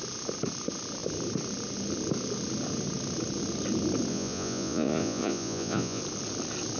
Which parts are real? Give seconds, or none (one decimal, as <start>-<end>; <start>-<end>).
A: 0.0-4.1; 6.0-6.8